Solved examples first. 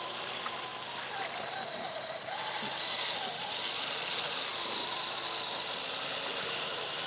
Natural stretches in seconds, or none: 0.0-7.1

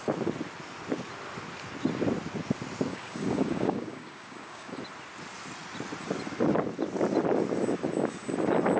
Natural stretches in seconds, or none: 0.0-2.9; 4.8-8.8

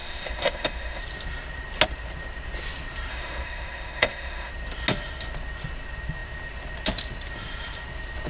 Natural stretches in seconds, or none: 1.0-3.1; 4.5-8.3

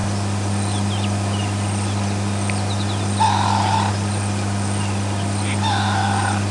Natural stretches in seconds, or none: 0.0-6.5

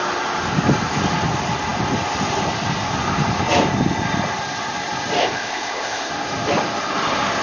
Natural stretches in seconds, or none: 0.0-5.2; 6.1-7.4

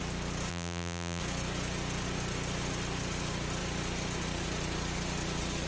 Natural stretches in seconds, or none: 0.0-0.5; 1.2-5.7